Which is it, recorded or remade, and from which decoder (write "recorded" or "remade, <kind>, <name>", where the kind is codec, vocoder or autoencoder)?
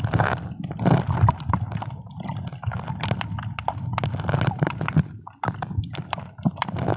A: recorded